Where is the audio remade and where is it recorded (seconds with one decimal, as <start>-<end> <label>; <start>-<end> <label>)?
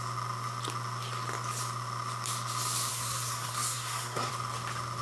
0.0-2.9 recorded; 2.9-4.3 remade; 4.3-5.0 recorded